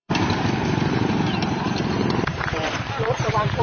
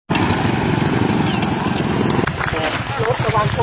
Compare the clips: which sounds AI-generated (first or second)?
first